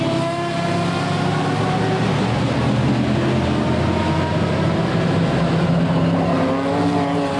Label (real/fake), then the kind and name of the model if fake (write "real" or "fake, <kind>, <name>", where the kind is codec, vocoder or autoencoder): real